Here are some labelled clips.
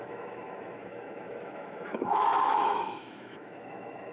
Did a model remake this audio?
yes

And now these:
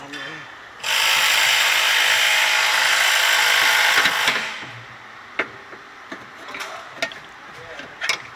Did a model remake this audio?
no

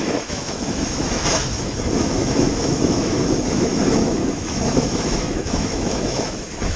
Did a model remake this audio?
yes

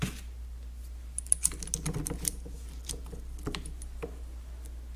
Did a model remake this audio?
no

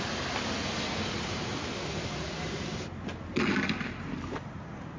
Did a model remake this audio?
no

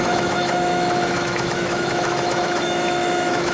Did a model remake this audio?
yes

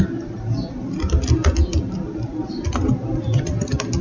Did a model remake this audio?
no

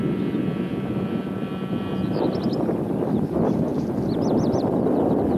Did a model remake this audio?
no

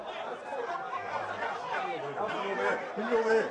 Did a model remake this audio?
no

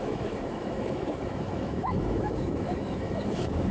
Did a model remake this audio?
yes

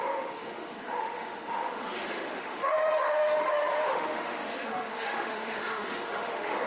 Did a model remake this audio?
yes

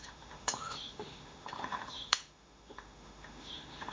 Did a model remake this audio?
yes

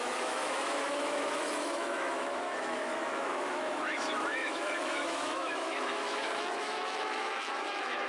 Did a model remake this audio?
yes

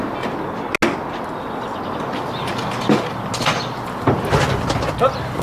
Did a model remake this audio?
no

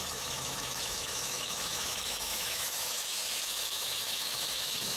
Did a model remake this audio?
yes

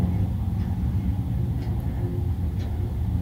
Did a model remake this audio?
no